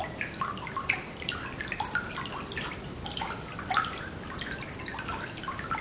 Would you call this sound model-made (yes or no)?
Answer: no